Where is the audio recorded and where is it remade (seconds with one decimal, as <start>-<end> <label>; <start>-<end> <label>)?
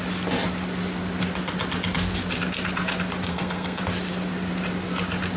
0.0-3.3 recorded; 3.3-3.8 remade; 3.8-5.4 recorded